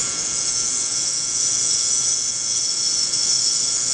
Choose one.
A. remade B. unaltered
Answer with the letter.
A